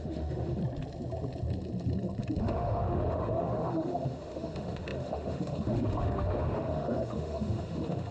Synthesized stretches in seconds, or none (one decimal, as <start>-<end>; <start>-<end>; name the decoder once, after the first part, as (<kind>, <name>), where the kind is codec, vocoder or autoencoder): 0.0-0.6 (autoencoder, DAC-VAE); 2.4-8.1